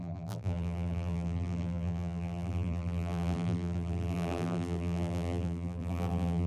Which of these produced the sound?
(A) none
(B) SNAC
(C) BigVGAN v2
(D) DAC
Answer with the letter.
C